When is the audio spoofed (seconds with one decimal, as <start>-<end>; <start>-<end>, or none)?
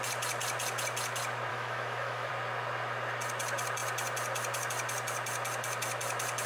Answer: 1.5-2.3